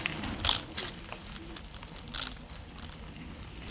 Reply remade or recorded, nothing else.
recorded